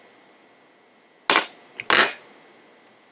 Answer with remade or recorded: recorded